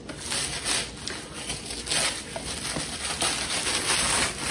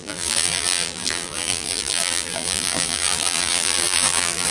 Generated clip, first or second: second